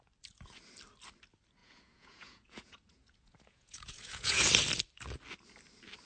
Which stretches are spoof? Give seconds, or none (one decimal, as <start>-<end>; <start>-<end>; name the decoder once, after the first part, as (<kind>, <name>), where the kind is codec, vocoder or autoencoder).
1.6-4.5 (vocoder, Vocos)